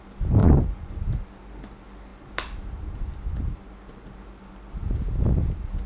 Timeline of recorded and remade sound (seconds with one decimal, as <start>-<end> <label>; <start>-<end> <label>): 0.0-0.4 recorded; 0.4-0.9 remade; 0.9-5.9 recorded